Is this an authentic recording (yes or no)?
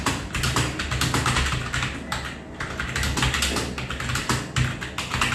yes